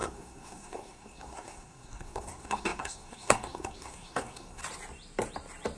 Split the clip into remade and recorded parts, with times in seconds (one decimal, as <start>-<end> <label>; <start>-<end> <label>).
0.0-4.6 remade; 4.6-5.8 recorded